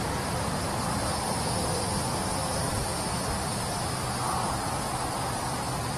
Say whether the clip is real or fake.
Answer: real